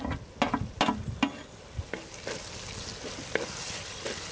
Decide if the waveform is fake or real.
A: real